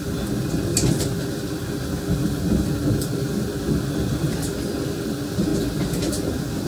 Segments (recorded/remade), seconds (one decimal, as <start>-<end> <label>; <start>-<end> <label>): 0.0-6.7 recorded